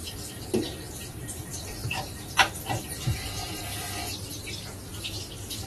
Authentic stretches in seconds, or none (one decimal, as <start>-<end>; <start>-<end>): 0.0-0.6; 1.8-5.2